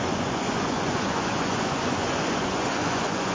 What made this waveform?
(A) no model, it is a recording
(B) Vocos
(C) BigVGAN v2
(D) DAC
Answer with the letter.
B